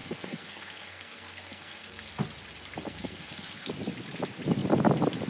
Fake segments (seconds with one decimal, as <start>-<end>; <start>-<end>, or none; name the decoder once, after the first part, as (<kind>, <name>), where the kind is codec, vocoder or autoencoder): 0.0-2.1 (codec, SNAC); 2.8-3.7